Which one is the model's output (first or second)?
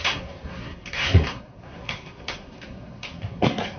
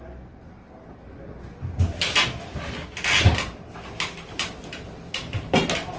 first